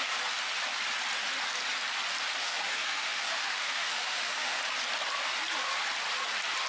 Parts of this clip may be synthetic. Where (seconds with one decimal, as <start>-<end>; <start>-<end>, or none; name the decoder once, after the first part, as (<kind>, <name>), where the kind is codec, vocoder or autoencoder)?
2.4-4.6 (autoencoder, DAC-VAE)